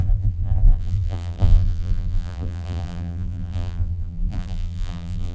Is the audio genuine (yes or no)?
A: no